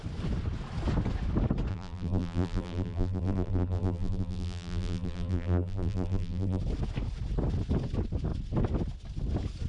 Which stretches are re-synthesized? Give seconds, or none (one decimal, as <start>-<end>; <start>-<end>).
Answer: 1.7-6.6